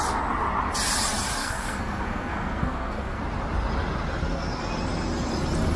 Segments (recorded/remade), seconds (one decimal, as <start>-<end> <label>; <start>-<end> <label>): 0.0-1.4 recorded; 1.4-3.2 remade; 3.2-5.8 recorded